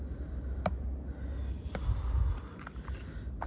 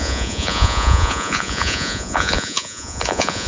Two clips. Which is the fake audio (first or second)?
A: second